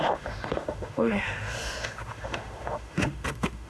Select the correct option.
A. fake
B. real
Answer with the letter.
A